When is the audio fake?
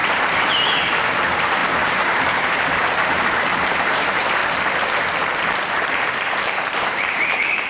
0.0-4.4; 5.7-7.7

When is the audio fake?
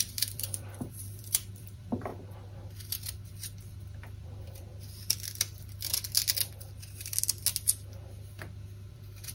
0.0-2.1; 3.8-4.7; 8.9-9.3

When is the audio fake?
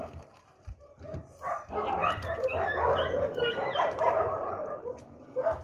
0.0-1.2; 3.6-4.9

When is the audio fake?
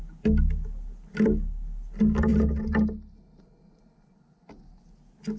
none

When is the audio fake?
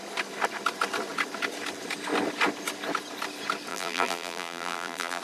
3.7-5.2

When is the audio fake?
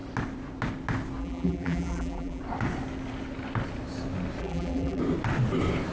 1.2-2.4; 4.4-5.0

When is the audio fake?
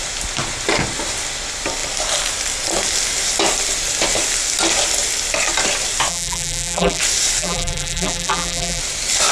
6.1-7.0; 7.4-8.8